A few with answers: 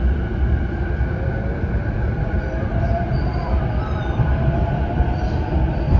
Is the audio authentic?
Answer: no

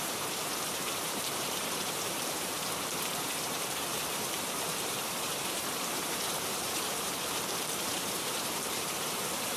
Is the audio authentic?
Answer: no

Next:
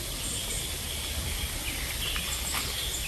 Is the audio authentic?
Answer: yes